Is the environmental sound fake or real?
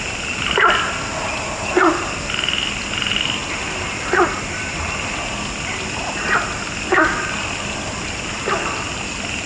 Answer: real